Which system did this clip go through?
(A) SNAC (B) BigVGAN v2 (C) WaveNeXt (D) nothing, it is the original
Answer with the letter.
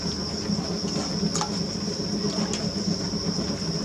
D